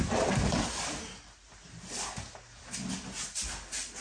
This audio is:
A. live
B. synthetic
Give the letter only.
A